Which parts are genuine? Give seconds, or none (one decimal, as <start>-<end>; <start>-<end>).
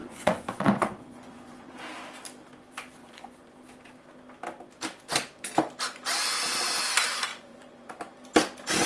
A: 1.7-3.0; 3.5-7.3; 8.0-8.9